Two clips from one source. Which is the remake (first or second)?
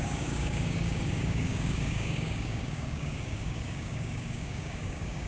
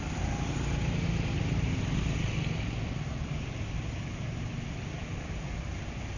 first